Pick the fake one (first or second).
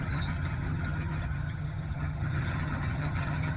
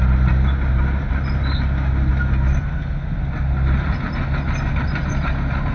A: first